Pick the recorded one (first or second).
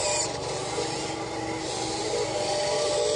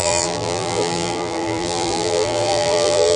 first